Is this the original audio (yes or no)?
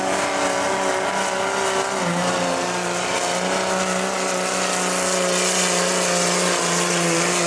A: yes